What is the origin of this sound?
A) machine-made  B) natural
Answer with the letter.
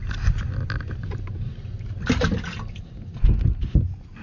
B